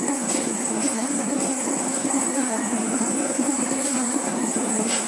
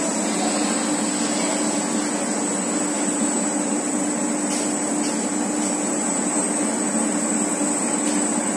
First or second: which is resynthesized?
first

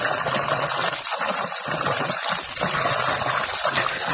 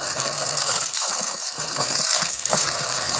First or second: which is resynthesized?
second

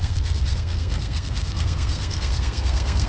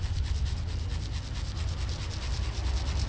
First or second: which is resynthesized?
first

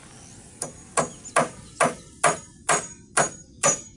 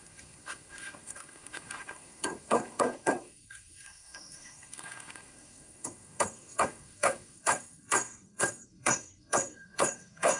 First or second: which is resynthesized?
second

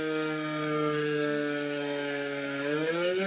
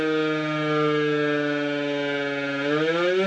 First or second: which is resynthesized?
first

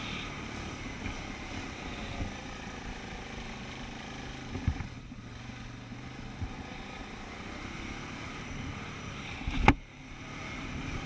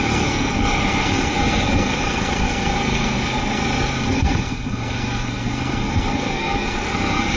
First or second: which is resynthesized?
second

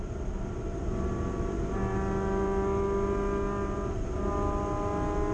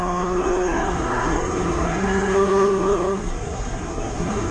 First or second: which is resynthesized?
second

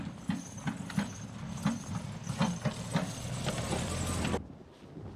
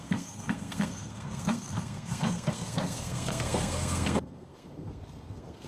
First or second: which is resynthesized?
second